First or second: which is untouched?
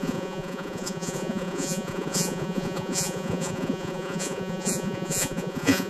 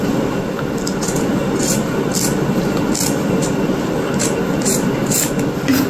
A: second